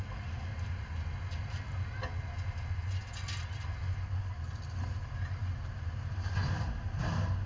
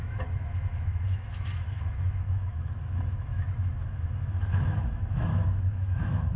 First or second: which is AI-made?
second